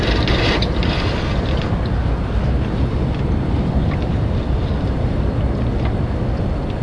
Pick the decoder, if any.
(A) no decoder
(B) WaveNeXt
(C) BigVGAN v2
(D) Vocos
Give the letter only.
A